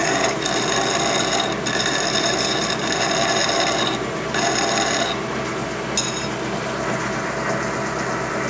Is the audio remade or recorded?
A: recorded